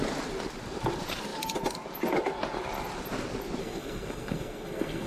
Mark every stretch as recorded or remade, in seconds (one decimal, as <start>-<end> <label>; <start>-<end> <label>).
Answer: 0.0-3.6 recorded; 3.6-5.1 remade